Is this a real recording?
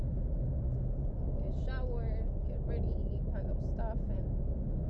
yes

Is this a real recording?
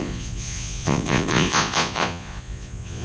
no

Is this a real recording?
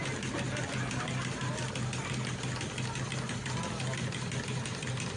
yes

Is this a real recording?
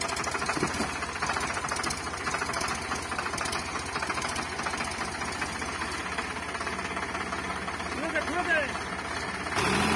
yes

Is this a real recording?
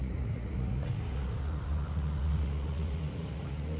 no